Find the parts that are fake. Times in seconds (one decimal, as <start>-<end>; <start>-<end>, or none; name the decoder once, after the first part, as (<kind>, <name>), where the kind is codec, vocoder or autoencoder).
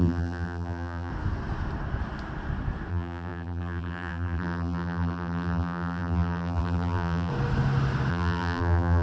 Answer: 0.0-1.1 (vocoder, BigVGAN v2); 2.9-7.3; 8.1-9.0